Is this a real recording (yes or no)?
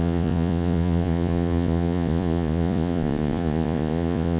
no